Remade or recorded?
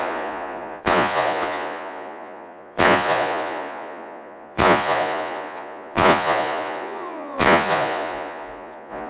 remade